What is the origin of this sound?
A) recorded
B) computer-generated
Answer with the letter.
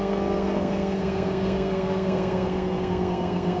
B